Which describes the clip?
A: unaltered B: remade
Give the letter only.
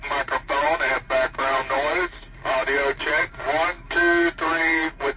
B